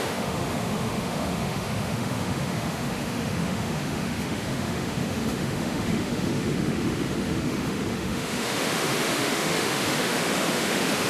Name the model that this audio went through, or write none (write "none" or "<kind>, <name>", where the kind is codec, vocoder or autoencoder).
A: autoencoder, DAC-VAE